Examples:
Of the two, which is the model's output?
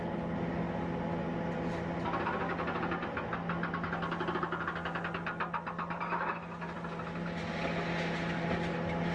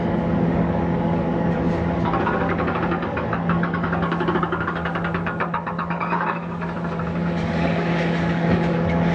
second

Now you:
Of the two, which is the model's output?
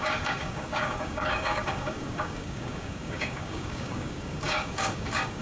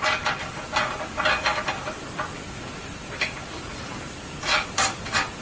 first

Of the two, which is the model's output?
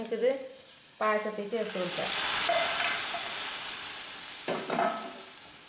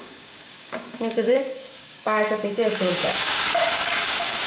second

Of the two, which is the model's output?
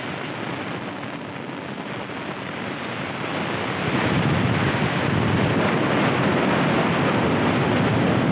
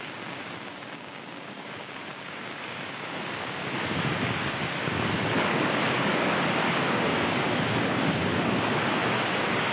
second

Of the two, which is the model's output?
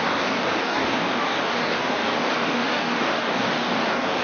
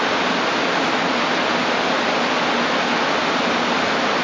first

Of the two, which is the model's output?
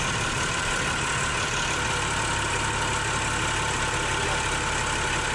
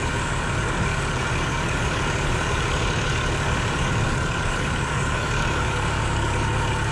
second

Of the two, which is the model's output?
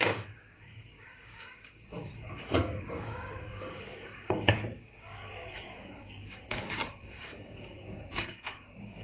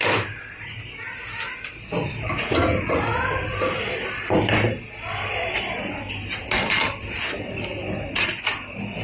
first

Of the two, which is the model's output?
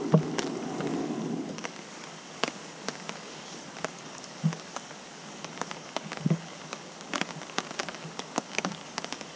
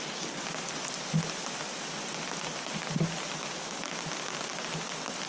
first